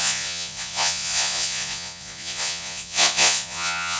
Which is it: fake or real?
fake